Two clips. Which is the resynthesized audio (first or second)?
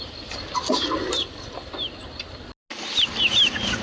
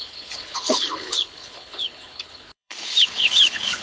second